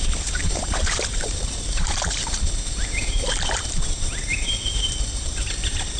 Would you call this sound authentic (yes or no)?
no